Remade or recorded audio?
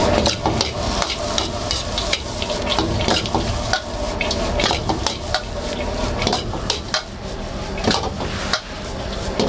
recorded